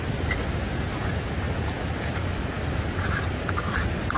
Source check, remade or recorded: recorded